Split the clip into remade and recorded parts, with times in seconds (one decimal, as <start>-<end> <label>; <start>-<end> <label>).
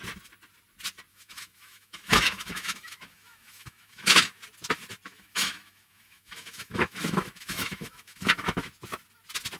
0.0-1.1 recorded; 1.1-4.4 remade; 4.4-5.1 recorded; 5.1-8.7 remade; 8.7-9.6 recorded